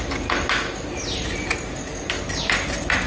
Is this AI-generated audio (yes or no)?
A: no